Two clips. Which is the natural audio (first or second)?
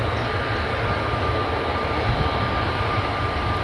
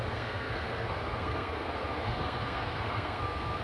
first